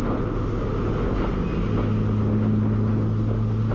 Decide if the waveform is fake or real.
real